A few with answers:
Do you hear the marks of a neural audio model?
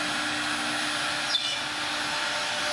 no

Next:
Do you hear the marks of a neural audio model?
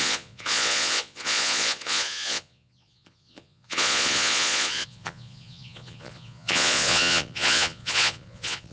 yes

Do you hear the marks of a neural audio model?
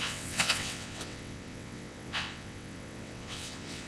yes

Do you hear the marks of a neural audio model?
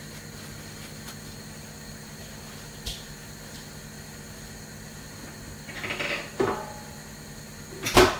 no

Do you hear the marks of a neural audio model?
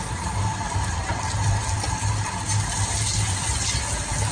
no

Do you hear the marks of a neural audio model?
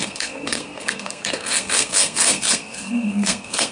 yes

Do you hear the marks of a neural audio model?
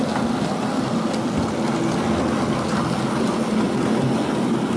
no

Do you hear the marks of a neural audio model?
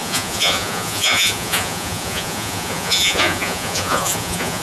yes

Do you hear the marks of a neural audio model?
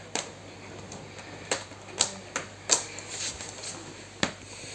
no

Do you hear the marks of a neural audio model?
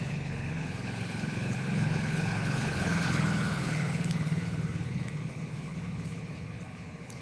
yes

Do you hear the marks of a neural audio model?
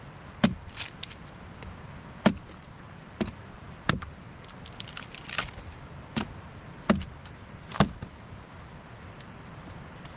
yes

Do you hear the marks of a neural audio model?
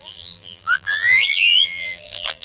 yes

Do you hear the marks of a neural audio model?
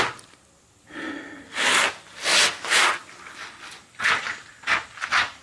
no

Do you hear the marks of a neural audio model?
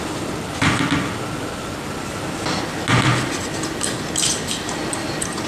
no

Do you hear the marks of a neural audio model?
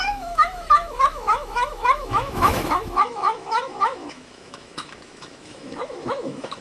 yes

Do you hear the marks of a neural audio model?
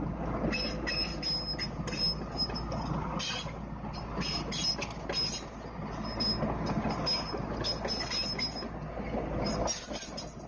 no